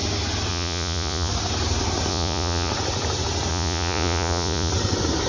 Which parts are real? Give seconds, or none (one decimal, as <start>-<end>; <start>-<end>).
0.0-0.5; 1.3-2.1; 2.7-3.5; 4.7-5.3